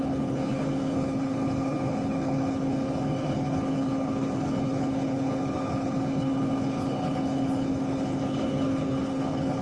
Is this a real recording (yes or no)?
no